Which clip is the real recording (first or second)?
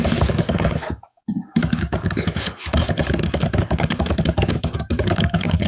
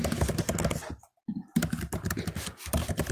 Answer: second